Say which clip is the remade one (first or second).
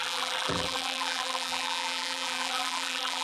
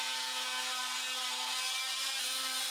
first